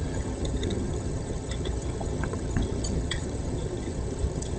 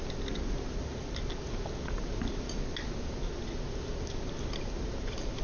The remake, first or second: first